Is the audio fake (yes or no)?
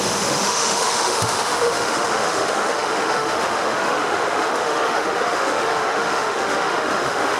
yes